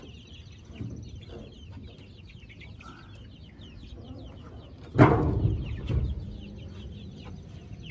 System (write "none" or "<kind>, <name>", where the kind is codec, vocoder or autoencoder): none